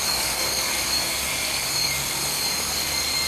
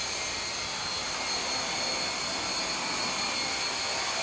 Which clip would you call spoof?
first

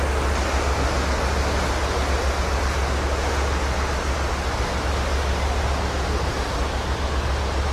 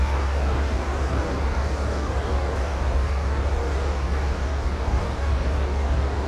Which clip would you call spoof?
second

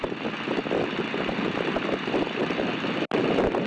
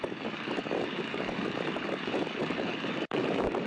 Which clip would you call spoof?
second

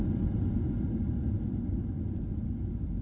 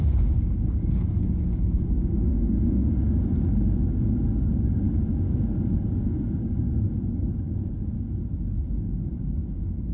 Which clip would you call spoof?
second